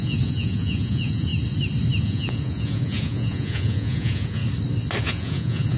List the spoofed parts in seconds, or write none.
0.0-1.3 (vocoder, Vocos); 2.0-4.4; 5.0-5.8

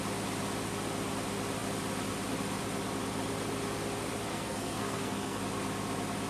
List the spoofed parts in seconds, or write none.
4.3-5.4 (codec, SNAC)

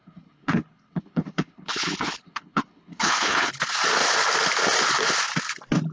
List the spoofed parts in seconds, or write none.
0.0-3.5 (codec, HILCodec)

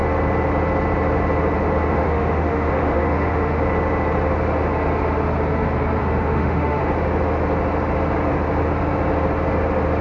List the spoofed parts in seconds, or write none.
1.9-3.6 (autoencoder, DAC-VAE); 6.0-6.8

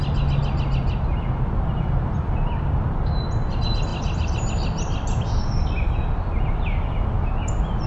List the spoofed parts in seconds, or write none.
none